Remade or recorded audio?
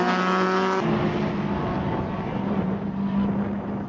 recorded